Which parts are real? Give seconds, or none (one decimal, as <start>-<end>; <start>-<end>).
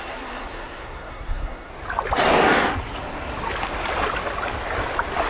1.7-5.3